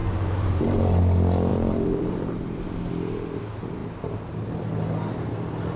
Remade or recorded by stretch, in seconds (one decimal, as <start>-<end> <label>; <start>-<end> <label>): 0.0-1.0 remade; 1.0-1.5 recorded; 1.5-2.9 remade; 2.9-5.8 recorded